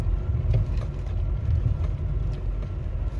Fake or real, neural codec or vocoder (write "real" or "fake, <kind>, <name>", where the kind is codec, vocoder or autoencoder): real